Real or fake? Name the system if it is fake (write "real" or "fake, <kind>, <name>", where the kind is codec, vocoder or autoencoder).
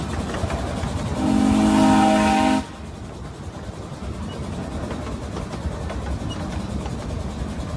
real